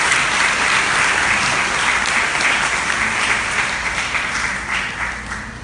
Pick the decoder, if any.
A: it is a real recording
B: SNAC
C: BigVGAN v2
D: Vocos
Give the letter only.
A